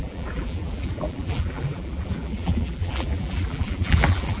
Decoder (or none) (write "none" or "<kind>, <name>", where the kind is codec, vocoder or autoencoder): vocoder, BigVGAN v2